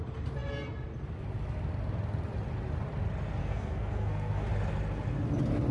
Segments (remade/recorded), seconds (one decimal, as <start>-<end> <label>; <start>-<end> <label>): 0.0-3.4 recorded; 3.4-4.5 remade; 4.5-5.7 recorded